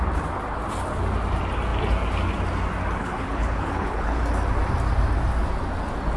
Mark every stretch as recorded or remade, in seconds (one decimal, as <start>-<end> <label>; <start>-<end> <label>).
0.0-3.0 recorded; 3.0-4.2 remade; 4.2-6.2 recorded